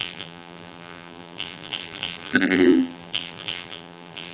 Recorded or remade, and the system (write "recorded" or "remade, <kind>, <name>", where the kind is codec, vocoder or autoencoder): remade, vocoder, BigVGAN v2